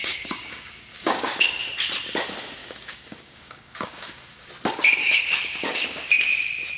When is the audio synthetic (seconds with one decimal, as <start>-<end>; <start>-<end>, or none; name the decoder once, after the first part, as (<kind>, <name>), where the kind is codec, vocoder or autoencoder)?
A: 0.0-1.6 (codec, DAC); 2.6-4.5; 5.0-6.3